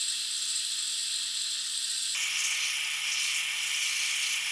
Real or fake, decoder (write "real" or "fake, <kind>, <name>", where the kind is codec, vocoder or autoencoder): real